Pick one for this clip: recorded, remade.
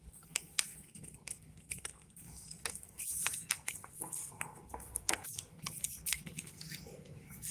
remade